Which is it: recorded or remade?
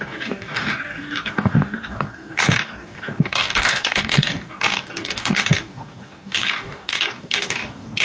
remade